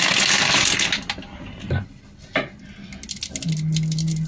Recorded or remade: recorded